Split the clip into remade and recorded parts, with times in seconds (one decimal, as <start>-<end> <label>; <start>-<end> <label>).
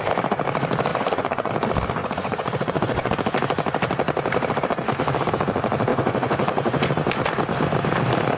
0.0-0.9 recorded; 0.9-1.5 remade; 1.5-2.0 recorded; 2.0-3.1 remade; 3.1-5.9 recorded; 5.9-6.9 remade; 6.9-8.4 recorded